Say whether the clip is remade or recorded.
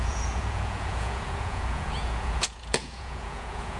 remade